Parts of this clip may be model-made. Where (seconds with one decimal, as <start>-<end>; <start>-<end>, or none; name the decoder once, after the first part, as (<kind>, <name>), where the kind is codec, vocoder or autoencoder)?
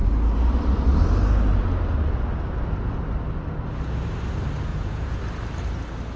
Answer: 4.7-5.2 (vocoder, Vocos)